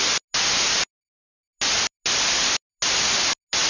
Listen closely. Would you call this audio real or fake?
real